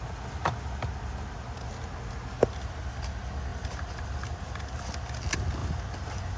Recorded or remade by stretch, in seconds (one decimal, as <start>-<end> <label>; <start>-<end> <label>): 0.0-6.4 recorded